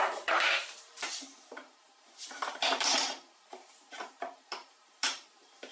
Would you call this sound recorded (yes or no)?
no